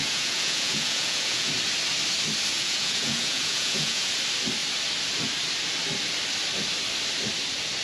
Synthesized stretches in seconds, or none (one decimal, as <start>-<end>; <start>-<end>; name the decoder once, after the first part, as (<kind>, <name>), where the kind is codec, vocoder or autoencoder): 0.0-1.5 (vocoder, Vocos); 2.5-4.1